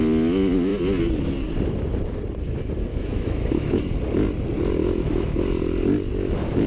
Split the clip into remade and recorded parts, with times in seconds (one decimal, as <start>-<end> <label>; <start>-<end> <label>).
0.0-2.9 recorded; 2.9-3.8 remade; 3.8-4.8 recorded; 4.8-5.6 remade; 5.6-6.7 recorded